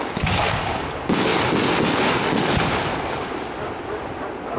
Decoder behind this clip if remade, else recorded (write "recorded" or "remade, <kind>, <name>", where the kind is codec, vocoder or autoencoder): recorded